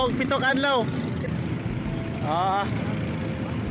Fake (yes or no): no